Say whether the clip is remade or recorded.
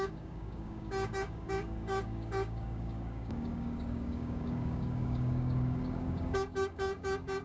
remade